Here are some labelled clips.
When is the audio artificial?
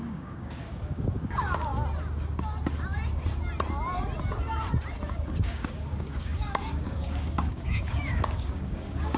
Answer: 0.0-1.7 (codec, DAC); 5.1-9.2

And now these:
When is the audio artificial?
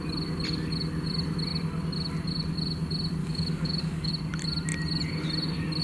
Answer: 3.2-4.1 (codec, DAC)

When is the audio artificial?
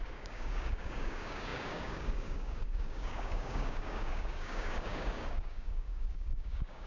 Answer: 0.0-6.9 (codec, DAC)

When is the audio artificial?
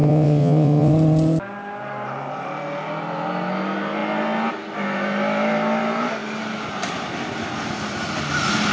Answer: 0.0-0.9 (vocoder, WaveNeXt)